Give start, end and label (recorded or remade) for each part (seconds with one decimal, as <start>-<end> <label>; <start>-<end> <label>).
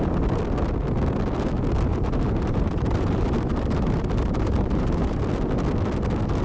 0.0-1.9 recorded; 1.9-5.2 remade; 5.2-6.4 recorded